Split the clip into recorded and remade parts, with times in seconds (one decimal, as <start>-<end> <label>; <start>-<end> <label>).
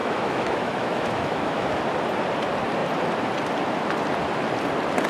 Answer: 0.0-1.8 remade; 1.8-5.1 recorded